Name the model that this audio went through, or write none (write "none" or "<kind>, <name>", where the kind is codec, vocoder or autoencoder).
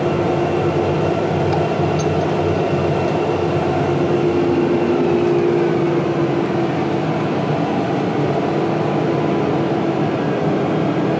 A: none